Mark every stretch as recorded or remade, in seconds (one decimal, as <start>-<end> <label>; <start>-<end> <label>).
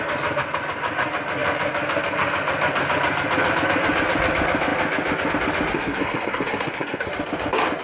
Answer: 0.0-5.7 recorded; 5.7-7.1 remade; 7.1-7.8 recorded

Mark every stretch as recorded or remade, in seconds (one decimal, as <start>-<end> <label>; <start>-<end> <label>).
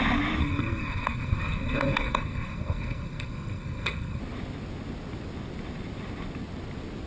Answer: 0.0-0.4 recorded; 0.4-4.2 remade; 4.2-7.1 recorded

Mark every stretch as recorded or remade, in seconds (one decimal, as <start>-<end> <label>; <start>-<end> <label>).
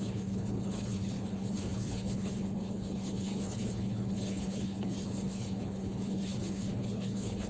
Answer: 0.0-7.5 remade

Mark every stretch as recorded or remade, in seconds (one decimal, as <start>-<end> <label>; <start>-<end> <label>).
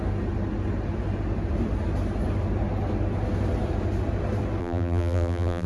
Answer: 0.0-4.6 recorded; 4.6-5.7 remade